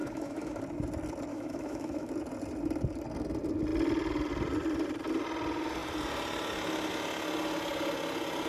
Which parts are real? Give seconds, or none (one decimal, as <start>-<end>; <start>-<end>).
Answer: 0.6-1.3; 2.1-8.5